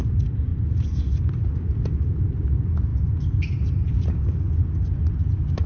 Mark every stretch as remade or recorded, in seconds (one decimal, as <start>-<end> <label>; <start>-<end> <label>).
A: 0.0-5.7 recorded